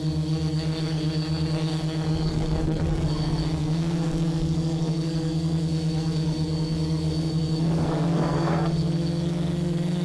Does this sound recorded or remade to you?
remade